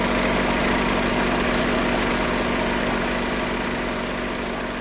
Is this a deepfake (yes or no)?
no